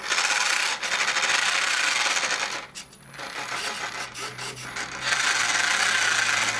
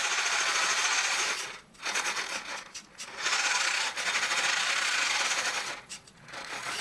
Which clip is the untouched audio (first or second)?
first